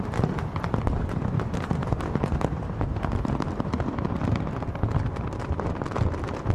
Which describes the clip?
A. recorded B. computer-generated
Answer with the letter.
A